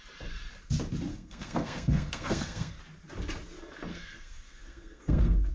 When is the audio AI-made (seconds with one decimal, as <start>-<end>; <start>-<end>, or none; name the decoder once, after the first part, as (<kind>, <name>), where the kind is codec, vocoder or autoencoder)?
1.1-2.8 (codec, SNAC); 3.9-5.5